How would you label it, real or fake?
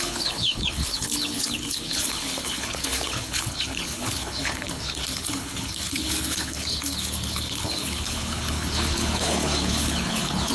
fake